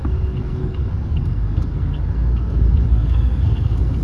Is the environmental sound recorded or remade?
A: remade